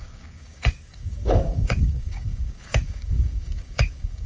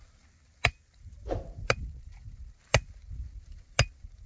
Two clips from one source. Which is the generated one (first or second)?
first